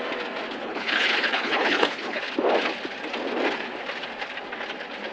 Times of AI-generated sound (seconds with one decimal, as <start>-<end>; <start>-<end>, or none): 0.6-2.2